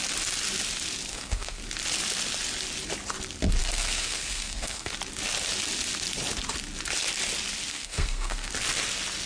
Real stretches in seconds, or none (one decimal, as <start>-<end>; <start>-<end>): 0.0-1.1; 1.6-3.6; 4.9-7.7; 8.5-9.3

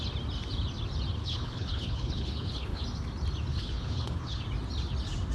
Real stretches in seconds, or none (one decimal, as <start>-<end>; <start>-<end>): 0.0-1.2; 2.8-3.5; 4.4-5.3

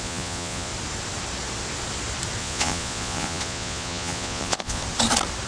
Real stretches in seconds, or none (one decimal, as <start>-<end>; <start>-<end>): 0.7-2.4; 4.8-5.5

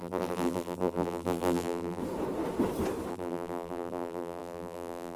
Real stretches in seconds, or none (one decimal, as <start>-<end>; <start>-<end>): 2.0-3.1

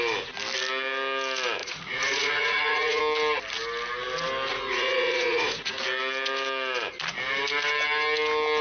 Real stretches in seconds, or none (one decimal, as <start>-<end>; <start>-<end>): 0.0-1.6; 3.0-4.5; 5.8-8.6

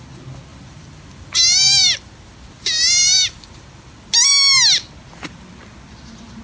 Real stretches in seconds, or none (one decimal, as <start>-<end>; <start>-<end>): 0.0-0.5; 4.3-6.4

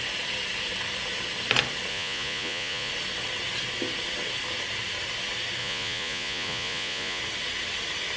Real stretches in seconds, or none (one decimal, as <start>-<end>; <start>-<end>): 0.0-1.9; 2.9-5.6; 7.2-8.2

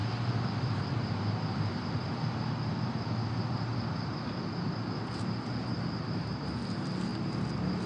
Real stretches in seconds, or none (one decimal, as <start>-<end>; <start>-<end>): 4.1-5.7; 6.3-7.9